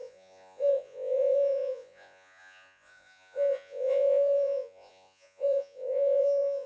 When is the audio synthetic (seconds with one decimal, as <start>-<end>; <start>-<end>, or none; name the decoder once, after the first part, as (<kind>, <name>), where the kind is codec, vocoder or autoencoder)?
0.0-6.7 (vocoder, Vocos)